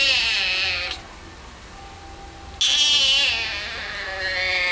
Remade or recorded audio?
recorded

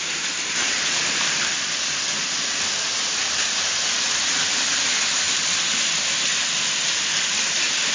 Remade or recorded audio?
recorded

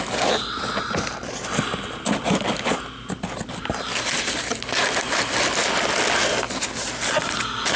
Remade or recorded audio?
recorded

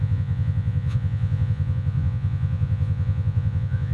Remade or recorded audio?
remade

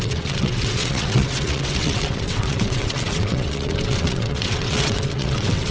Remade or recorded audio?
remade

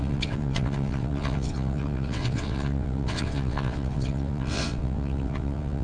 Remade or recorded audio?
remade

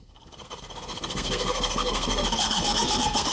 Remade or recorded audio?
remade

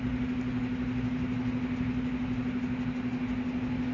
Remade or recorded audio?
recorded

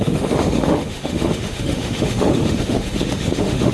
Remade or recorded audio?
remade